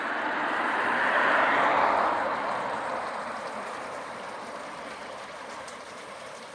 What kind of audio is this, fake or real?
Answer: fake